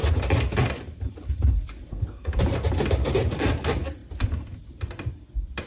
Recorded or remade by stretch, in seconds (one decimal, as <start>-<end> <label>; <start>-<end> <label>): 0.0-1.9 recorded; 1.9-2.4 remade; 2.4-5.7 recorded